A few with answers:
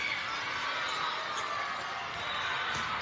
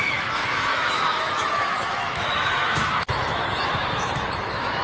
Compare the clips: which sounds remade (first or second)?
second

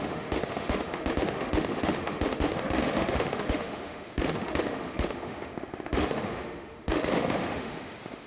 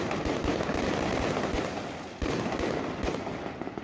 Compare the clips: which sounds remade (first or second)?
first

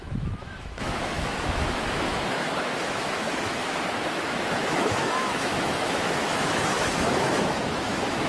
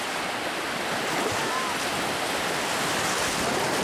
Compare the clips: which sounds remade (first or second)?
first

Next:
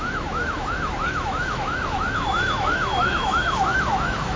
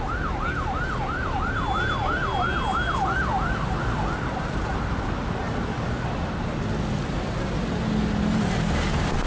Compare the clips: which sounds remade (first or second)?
first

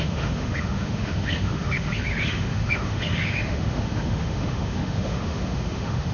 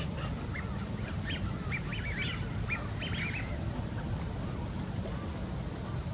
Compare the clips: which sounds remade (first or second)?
first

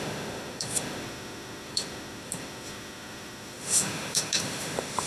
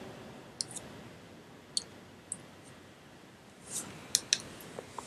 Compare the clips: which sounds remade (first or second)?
first